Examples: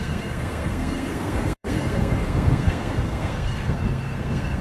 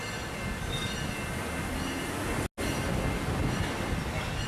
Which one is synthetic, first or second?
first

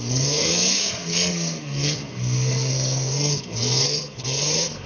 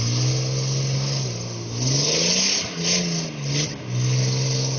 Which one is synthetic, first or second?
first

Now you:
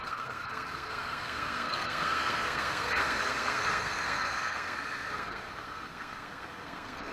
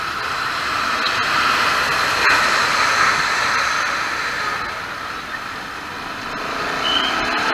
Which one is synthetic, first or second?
first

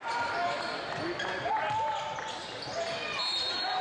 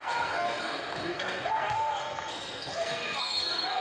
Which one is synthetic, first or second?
second